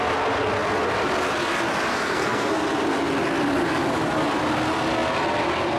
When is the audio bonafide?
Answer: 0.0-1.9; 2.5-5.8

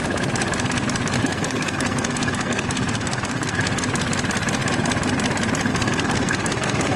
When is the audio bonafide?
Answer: 0.0-1.2; 3.8-5.7

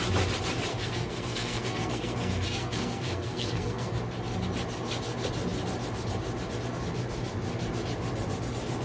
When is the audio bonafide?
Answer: 0.0-0.7; 4.0-8.8

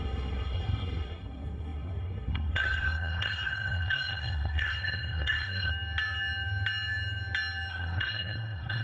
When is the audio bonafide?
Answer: 5.7-7.7

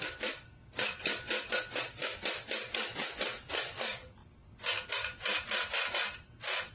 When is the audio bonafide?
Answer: 0.0-6.7

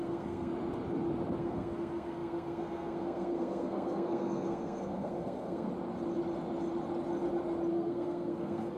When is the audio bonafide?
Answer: 0.5-1.4; 5.7-7.7